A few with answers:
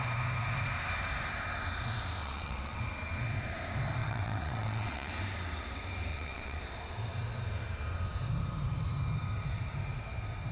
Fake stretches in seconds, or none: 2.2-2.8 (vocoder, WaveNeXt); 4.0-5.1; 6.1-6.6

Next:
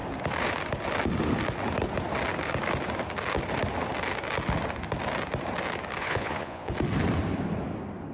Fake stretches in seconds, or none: 6.0-6.7 (vocoder, Vocos)

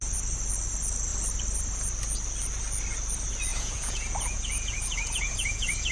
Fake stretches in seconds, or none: 3.5-5.9 (vocoder, Vocos)

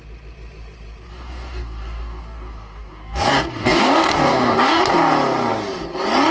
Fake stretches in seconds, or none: 1.1-4.8 (codec, DAC)

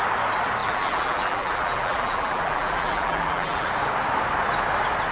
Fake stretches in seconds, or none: 0.6-3.7 (vocoder, BigVGAN v2)

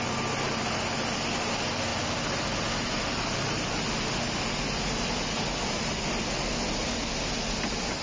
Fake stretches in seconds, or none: none

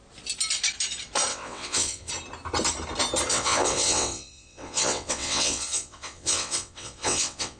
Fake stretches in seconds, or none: 1.3-2.1 (vocoder, WaveNeXt); 3.3-7.6